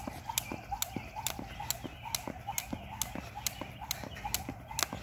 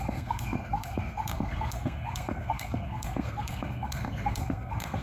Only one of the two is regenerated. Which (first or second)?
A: second